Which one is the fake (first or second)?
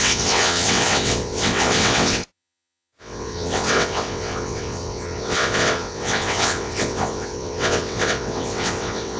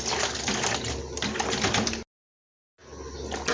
first